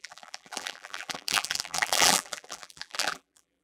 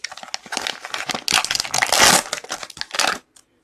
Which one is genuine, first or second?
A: second